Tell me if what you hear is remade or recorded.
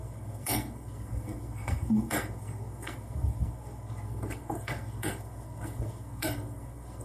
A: remade